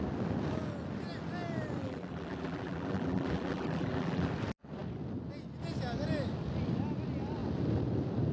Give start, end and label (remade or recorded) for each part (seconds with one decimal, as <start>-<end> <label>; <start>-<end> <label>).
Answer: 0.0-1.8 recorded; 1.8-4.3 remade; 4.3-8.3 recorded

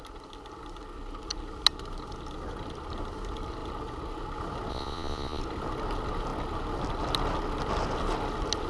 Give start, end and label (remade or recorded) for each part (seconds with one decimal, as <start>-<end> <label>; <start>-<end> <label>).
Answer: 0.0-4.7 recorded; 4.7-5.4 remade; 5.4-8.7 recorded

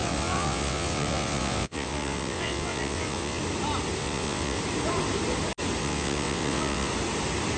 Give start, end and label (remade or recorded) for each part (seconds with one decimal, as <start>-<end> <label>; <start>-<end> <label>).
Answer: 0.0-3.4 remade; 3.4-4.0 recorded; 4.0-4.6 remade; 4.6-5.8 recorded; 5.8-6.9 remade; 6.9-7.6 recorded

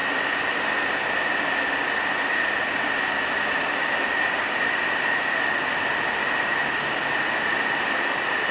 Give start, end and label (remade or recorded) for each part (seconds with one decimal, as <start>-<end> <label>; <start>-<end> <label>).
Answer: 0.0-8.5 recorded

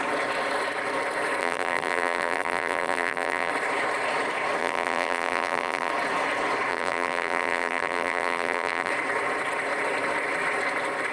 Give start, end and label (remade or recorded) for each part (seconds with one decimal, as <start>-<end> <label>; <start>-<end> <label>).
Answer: 0.0-1.4 recorded; 1.4-3.5 remade; 3.5-4.6 recorded; 4.6-5.9 remade; 5.9-6.7 recorded; 6.7-8.9 remade; 8.9-11.1 recorded

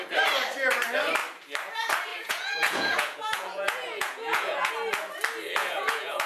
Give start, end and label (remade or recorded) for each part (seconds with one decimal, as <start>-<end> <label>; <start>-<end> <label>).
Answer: 0.0-2.1 recorded; 2.1-4.7 remade; 4.7-5.6 recorded; 5.6-6.3 remade

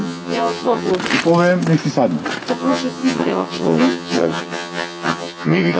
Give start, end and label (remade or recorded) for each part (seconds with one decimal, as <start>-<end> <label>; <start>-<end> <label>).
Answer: 0.0-0.9 remade; 0.9-2.5 recorded; 2.5-5.8 remade